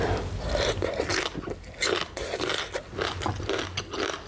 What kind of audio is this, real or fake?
real